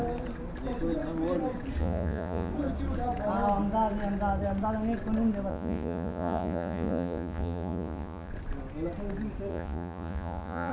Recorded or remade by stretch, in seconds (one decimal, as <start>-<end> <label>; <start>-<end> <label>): 0.0-1.8 recorded; 1.8-2.5 remade; 2.5-5.5 recorded; 5.5-8.3 remade; 8.3-9.5 recorded; 9.5-10.7 remade